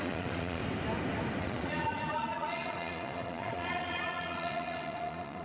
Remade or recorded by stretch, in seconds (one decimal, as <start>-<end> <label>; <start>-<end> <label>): 0.0-0.6 remade; 0.6-1.4 recorded; 1.4-5.4 remade